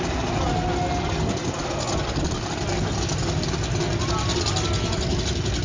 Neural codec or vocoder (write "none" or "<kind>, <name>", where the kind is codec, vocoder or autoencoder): none